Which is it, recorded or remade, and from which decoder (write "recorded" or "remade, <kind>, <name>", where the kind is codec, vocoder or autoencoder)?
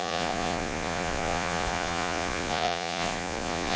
remade, vocoder, Vocos